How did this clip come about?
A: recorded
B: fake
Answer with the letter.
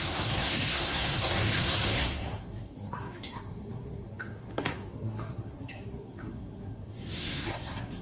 B